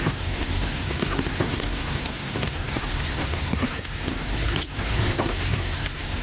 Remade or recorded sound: remade